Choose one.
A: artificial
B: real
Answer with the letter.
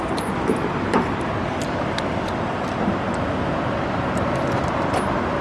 A